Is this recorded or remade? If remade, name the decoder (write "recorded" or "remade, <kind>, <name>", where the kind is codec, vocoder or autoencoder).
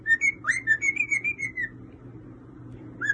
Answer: recorded